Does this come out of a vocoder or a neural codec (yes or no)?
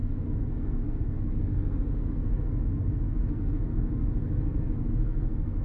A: yes